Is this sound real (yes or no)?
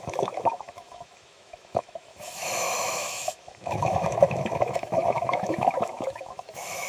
no